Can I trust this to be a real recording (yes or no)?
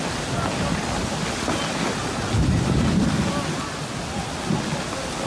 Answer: yes